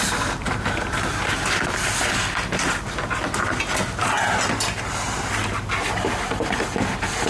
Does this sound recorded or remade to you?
recorded